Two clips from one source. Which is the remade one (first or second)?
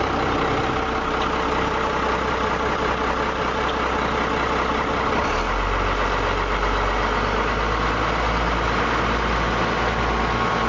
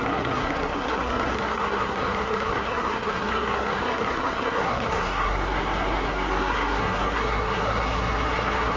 second